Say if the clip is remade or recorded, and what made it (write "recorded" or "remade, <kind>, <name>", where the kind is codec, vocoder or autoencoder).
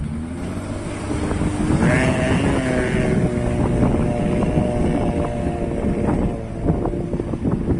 recorded